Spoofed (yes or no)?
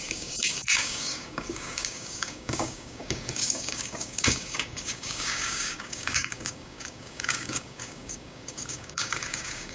yes